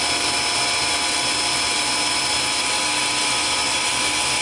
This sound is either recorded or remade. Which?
recorded